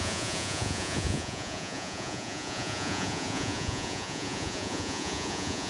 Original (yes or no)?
no